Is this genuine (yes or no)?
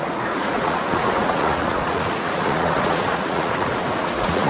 no